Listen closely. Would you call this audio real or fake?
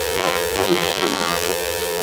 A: fake